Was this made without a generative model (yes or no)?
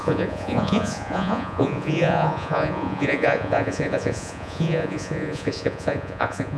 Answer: no